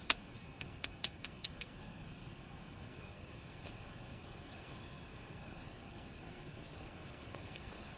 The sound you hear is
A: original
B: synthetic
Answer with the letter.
B